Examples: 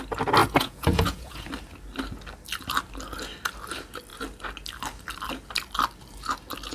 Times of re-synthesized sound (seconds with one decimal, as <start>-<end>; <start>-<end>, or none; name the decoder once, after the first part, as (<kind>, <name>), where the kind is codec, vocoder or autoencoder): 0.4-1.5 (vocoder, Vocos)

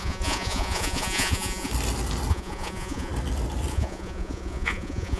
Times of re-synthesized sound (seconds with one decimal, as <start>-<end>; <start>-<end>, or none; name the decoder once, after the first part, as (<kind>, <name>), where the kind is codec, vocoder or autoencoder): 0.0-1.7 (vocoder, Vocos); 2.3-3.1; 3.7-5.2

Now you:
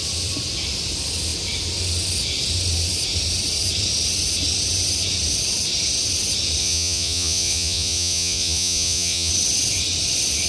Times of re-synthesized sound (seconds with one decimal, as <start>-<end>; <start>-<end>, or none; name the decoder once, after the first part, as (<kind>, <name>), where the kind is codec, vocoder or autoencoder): 6.6-9.3 (vocoder, Vocos)

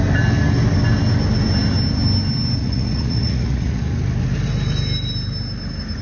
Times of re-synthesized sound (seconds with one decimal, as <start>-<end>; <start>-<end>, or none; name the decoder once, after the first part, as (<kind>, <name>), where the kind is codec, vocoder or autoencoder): 2.6-3.8 (vocoder, Vocos)

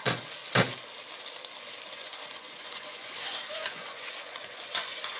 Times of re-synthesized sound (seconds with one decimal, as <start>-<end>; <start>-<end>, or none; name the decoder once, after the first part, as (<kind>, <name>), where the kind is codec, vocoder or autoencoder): 0.0-0.4 (vocoder, Vocos); 1.9-5.2